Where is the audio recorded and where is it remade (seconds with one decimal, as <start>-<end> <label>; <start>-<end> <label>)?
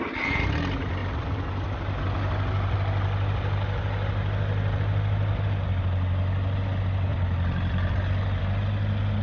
0.0-1.0 recorded; 1.0-5.8 remade; 5.8-7.1 recorded; 7.1-8.4 remade; 8.4-9.2 recorded